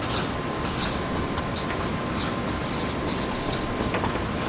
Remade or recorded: recorded